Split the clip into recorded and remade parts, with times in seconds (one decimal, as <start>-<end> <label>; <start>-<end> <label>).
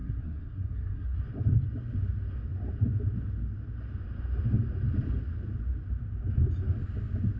0.0-1.2 remade; 1.2-7.4 recorded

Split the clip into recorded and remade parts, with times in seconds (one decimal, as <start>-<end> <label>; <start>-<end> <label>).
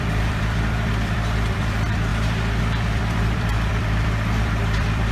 0.0-2.1 remade; 2.1-2.6 recorded; 2.6-5.1 remade